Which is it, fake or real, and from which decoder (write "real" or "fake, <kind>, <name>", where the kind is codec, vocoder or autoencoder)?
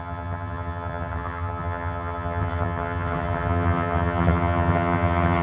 fake, vocoder, HiFi-GAN